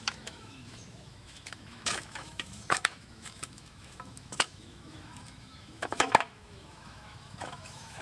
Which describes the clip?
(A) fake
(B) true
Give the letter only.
A